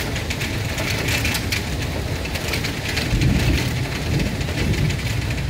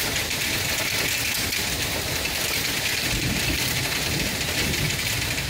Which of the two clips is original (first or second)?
first